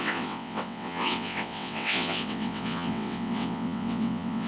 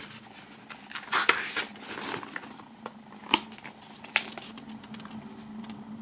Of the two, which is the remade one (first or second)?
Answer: first